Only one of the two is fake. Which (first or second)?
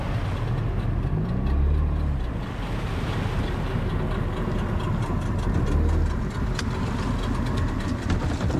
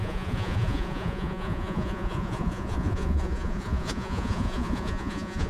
second